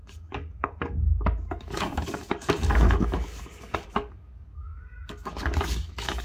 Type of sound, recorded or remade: remade